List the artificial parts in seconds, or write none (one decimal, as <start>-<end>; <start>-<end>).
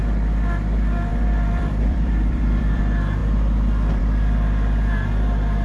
1.1-2.8